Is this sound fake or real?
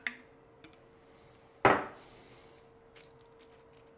real